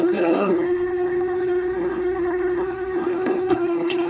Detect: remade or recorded remade